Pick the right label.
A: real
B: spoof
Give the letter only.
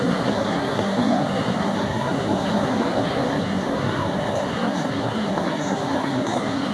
B